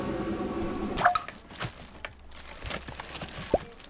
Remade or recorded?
recorded